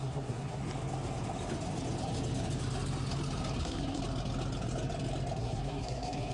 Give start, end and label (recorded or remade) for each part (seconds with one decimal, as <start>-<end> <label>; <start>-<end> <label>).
0.0-0.6 remade; 0.6-3.6 recorded; 3.6-4.0 remade; 4.0-5.4 recorded; 5.4-6.3 remade